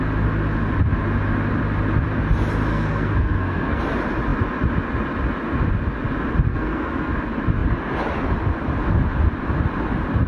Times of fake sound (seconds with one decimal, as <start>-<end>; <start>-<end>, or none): 2.7-3.8; 6.5-7.1